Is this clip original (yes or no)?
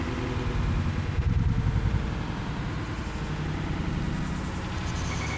yes